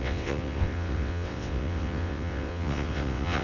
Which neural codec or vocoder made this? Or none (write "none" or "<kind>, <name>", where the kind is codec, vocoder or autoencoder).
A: vocoder, WaveNeXt